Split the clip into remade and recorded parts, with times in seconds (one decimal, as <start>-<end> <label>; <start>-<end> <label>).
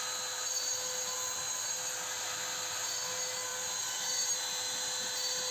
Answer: 0.0-5.5 recorded